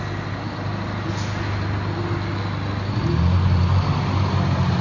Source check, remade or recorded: recorded